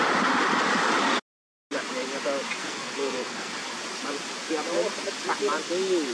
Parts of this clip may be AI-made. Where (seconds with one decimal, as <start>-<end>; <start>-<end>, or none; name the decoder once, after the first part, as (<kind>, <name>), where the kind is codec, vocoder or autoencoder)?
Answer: 2.6-3.5 (codec, SNAC)